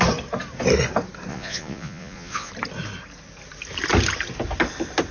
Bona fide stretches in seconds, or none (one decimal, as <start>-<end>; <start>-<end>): 0.0-1.3; 2.5-5.1